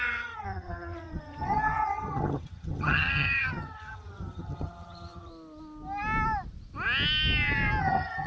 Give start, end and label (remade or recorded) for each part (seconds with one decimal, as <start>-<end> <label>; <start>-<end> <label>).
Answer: 0.0-5.3 remade; 5.3-7.8 recorded; 7.8-8.3 remade